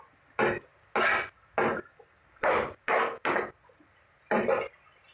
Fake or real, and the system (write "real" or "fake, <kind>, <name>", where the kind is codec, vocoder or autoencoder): real